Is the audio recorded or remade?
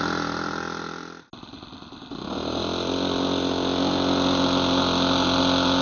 recorded